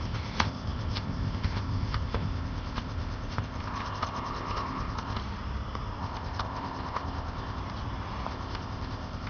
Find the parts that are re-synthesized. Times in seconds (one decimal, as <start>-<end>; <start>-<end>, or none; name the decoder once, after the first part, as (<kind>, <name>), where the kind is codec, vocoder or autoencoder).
0.0-5.2 (codec, ZipCodec); 6.0-7.6; 8.3-9.3